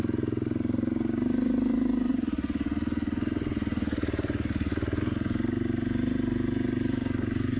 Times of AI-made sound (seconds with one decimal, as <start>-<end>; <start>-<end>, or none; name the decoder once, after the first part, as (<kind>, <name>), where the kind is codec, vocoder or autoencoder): none